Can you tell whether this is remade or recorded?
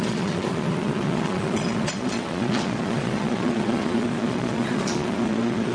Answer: remade